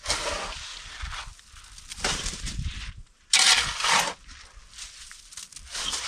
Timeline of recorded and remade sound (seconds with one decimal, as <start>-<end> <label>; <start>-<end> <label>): 0.0-1.9 recorded; 1.9-3.5 remade; 3.5-6.1 recorded